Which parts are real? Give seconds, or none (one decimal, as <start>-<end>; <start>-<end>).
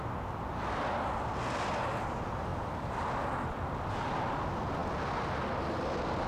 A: 0.0-6.3